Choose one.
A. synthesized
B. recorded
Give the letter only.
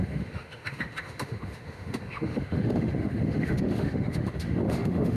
A